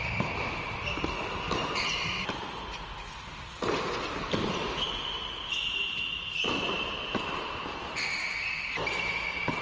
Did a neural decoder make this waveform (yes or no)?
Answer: no